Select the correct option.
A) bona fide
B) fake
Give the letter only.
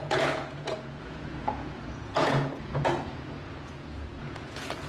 B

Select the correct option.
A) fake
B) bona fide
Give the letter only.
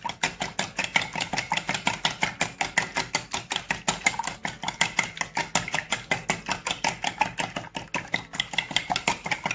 B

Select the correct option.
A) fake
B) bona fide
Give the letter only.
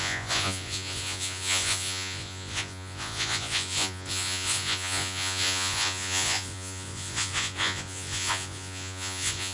A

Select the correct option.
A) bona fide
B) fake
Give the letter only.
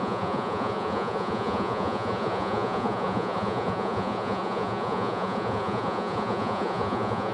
B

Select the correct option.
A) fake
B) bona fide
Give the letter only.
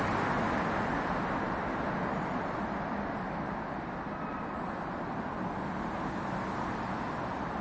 B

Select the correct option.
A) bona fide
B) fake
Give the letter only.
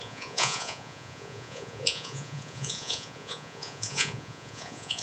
B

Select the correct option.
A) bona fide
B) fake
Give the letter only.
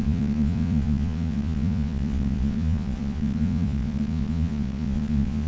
B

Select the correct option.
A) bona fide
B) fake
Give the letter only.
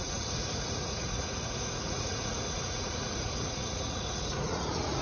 B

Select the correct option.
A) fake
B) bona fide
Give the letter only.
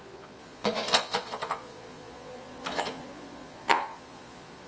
A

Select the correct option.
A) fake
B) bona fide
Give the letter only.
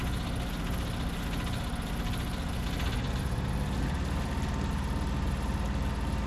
B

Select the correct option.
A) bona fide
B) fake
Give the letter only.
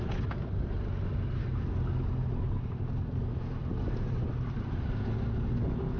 A